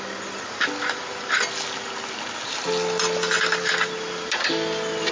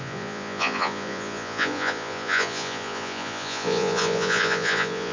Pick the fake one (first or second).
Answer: second